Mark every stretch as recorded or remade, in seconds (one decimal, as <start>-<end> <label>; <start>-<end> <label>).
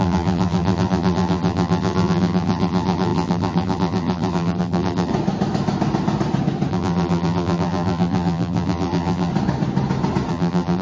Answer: 0.0-5.1 remade; 5.1-6.7 recorded; 6.7-9.3 remade; 9.3-10.3 recorded; 10.3-10.8 remade